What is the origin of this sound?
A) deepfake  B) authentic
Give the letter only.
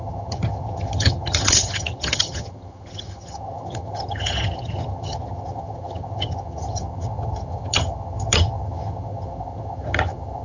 A